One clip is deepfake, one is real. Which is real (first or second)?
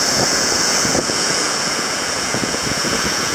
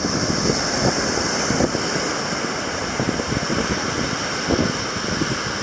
second